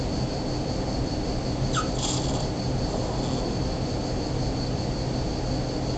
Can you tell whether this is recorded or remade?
recorded